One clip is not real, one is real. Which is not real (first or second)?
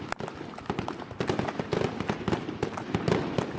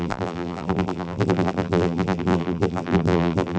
second